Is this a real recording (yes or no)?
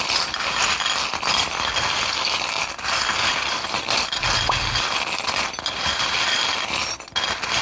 yes